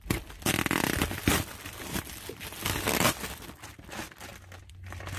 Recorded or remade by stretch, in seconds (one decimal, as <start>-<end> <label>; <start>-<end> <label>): 0.0-5.2 recorded